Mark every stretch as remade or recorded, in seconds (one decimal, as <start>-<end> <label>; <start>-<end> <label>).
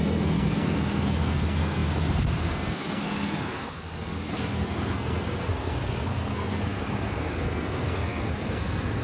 0.0-9.0 remade